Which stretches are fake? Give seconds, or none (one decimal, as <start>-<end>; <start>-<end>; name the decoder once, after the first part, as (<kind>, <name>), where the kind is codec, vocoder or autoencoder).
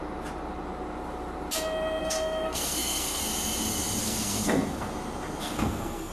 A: 2.0-3.2 (codec, SNAC); 4.0-4.9; 5.4-6.1